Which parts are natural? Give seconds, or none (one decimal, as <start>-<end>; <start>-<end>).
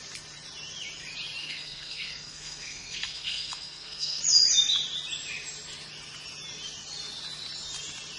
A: 0.0-1.4; 4.2-8.2